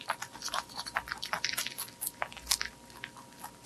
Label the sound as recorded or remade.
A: recorded